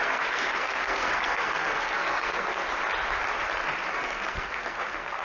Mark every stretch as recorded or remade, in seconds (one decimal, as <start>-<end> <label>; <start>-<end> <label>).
0.0-2.6 remade; 2.6-3.9 recorded; 3.9-5.2 remade